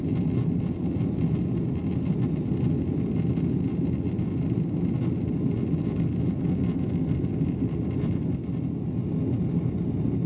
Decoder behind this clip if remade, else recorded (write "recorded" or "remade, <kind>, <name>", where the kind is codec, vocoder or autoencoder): recorded